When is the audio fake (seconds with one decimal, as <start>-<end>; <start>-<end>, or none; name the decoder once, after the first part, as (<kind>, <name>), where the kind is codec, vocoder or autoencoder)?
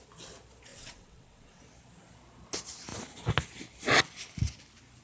0.7-1.6 (vocoder, WaveNeXt)